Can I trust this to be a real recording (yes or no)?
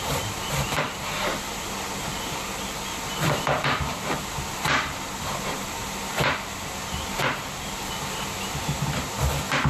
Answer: no